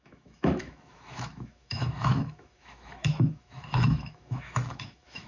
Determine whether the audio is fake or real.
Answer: fake